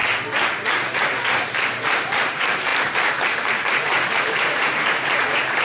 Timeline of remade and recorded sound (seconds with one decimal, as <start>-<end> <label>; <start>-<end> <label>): 0.0-0.9 recorded; 0.9-5.6 remade